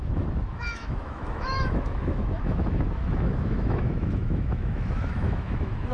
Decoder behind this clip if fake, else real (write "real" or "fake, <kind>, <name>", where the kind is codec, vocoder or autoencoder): fake, autoencoder, DAC-VAE